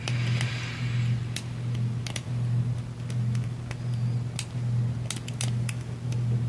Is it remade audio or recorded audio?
recorded